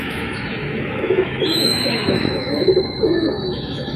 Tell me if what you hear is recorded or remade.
remade